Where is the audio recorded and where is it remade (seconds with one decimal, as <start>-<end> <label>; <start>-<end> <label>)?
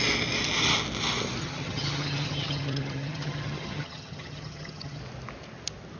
0.0-1.4 recorded; 1.4-5.0 remade; 5.0-6.0 recorded